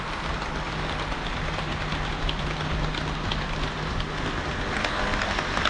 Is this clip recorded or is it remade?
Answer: recorded